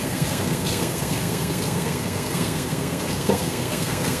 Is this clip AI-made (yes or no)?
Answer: yes